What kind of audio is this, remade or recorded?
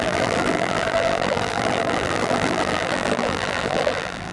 remade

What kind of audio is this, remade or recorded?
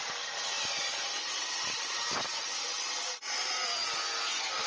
remade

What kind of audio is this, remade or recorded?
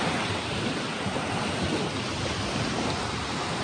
recorded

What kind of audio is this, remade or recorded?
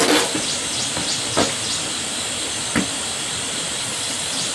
recorded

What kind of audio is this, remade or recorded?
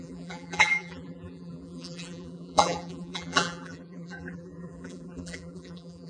remade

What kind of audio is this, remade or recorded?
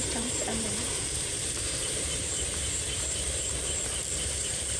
remade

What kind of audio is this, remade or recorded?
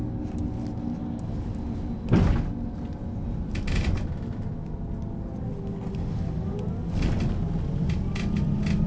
recorded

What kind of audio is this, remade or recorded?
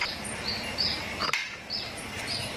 remade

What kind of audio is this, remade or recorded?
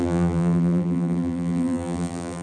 remade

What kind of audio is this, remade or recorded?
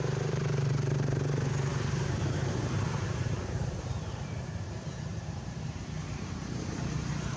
remade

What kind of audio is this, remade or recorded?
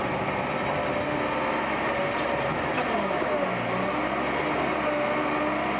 recorded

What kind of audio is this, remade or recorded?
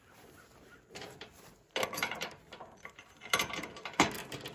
recorded